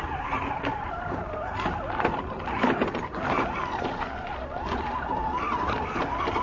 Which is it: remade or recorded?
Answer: recorded